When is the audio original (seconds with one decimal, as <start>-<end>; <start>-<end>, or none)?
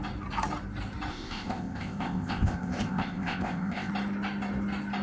0.0-1.1; 3.9-5.0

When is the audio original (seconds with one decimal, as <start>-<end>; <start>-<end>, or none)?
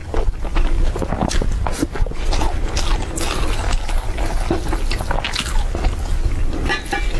0.0-7.2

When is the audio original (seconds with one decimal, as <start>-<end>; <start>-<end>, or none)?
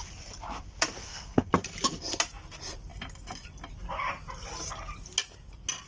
0.0-1.0; 1.5-5.9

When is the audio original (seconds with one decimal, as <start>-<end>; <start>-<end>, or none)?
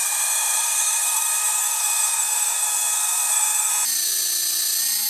3.7-5.1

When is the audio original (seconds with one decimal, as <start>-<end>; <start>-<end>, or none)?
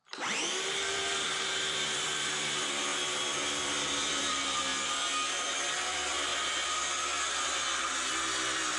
4.7-5.3; 6.3-8.1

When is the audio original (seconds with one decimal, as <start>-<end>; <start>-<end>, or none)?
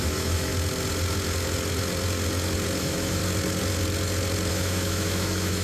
0.5-2.8; 3.2-4.5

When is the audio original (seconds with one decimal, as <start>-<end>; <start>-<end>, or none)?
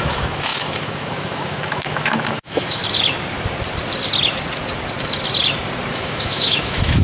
2.8-5.9